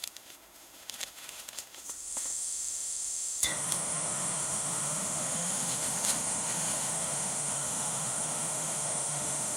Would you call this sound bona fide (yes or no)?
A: no